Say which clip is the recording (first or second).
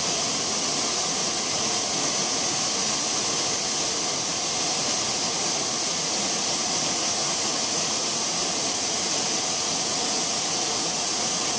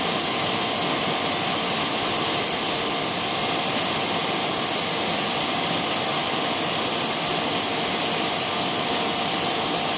second